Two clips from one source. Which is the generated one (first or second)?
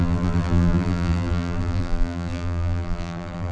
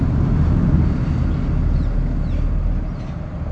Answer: first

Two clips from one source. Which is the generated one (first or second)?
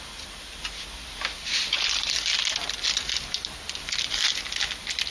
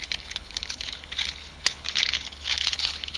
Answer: second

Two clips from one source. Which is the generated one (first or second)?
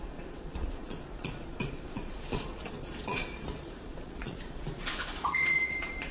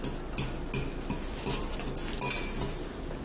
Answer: first